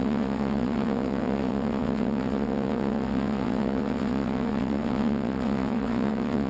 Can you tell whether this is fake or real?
fake